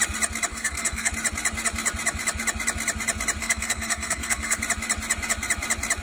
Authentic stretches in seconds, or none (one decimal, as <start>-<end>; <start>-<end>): 0.0-0.5; 1.1-3.4; 4.6-6.0